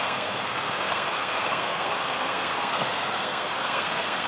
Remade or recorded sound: remade